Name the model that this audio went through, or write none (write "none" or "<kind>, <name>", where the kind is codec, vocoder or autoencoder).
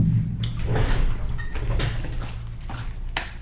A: none